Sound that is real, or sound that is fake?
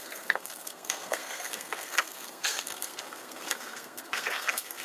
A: fake